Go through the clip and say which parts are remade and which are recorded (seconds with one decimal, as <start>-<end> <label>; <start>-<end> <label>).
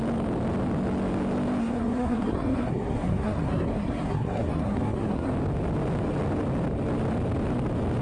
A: 0.0-1.6 recorded; 1.6-5.3 remade; 5.3-8.0 recorded